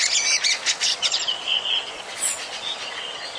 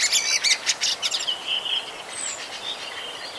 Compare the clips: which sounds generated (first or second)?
first